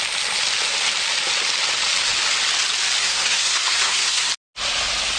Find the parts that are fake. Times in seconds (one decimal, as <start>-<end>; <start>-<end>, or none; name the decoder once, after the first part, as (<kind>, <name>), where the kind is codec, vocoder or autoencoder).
3.0-4.3 (codec, SNAC)